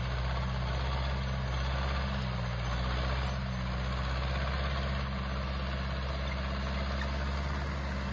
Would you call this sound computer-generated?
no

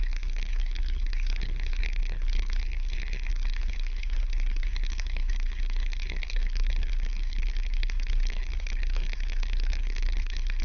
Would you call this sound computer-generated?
yes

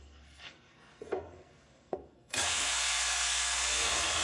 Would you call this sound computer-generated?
yes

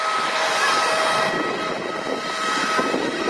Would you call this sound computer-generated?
no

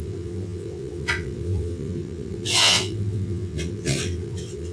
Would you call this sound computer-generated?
yes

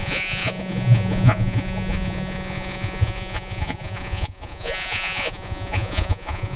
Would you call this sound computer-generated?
yes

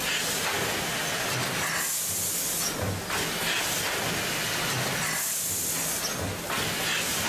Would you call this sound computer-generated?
no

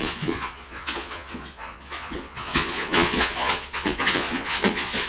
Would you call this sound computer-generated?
yes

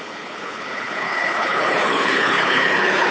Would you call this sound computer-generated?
yes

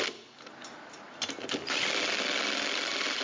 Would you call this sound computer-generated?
no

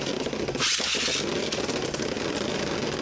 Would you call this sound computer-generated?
no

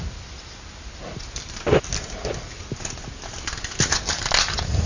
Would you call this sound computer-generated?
no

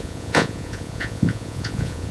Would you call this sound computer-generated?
yes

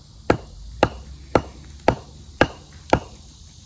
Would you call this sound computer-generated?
no